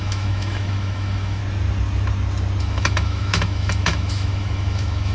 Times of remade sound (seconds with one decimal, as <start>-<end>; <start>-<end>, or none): 0.0-1.4; 2.6-5.1